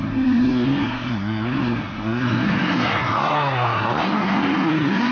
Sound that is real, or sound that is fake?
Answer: fake